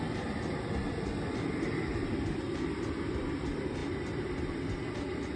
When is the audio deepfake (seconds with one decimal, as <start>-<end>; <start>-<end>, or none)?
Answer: none